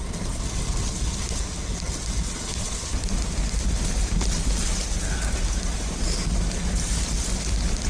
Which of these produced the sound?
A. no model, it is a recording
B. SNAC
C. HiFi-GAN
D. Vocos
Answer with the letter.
A